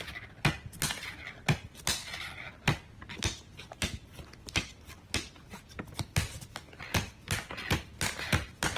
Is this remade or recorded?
recorded